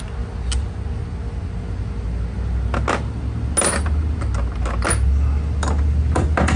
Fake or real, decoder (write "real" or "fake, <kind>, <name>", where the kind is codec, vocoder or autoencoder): real